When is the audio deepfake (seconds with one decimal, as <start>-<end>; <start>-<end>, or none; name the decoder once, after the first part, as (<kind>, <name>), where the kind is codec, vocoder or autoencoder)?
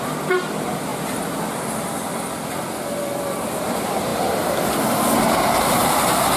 5.8-6.4 (vocoder, BigVGAN v2)